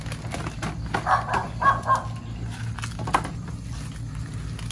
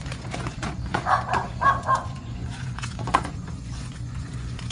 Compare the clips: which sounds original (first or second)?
first